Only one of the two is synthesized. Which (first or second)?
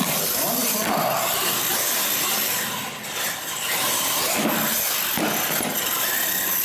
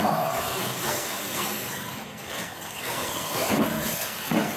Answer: second